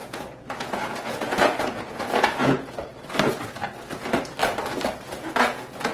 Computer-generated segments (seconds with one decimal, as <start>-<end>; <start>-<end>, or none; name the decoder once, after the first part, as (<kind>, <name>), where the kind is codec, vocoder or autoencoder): 0.0-2.9 (vocoder, Vocos); 5.1-5.9